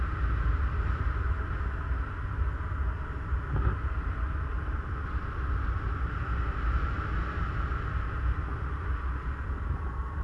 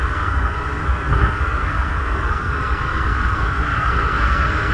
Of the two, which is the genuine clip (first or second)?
first